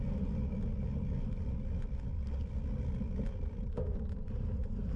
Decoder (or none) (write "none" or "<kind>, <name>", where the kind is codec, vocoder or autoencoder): none